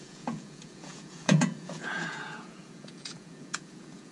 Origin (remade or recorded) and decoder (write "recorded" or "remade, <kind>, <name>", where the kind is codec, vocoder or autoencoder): remade, vocoder, Vocos